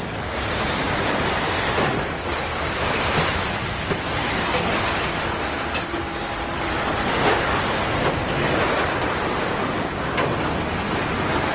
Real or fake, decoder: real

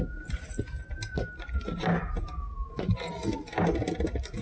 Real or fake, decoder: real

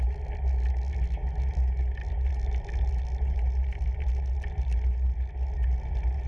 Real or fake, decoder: real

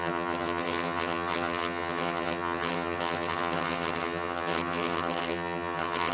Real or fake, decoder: fake, vocoder, HiFi-GAN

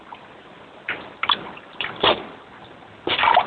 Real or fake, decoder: real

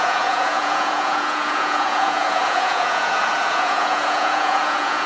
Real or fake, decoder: fake, vocoder, Vocos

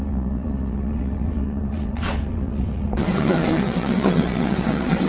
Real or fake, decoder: fake, vocoder, WaveNeXt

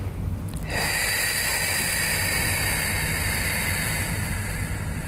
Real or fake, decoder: fake, vocoder, BigVGAN v2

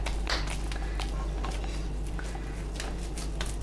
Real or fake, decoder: real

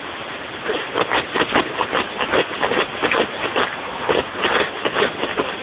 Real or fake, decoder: real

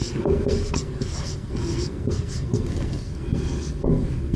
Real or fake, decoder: fake, codec, SNAC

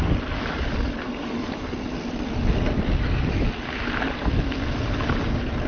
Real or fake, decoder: real